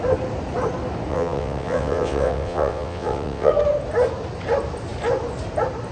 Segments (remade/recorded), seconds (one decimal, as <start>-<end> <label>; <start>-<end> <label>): 0.0-1.1 recorded; 1.1-3.5 remade; 3.5-5.9 recorded